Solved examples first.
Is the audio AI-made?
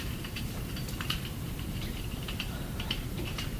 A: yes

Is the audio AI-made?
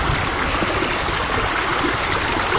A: no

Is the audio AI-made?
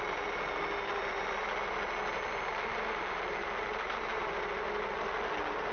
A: no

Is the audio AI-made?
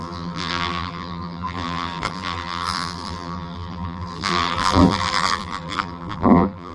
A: yes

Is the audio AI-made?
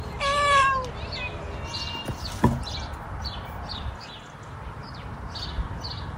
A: yes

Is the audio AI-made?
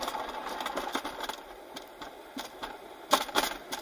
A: no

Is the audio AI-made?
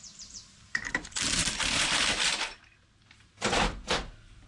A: yes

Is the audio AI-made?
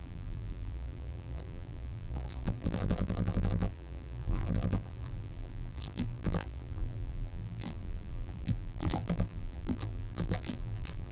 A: yes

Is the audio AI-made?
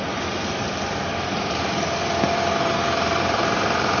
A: yes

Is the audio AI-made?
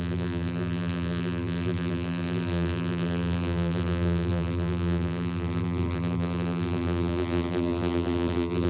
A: yes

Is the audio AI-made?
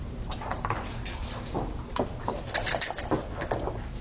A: no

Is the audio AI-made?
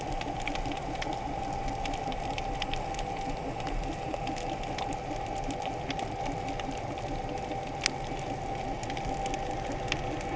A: no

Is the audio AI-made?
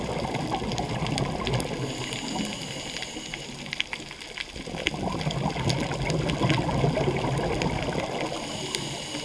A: no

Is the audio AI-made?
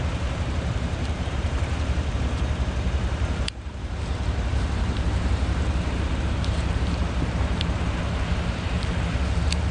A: yes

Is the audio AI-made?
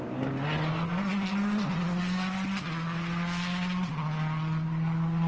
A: no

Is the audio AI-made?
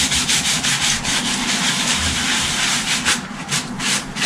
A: yes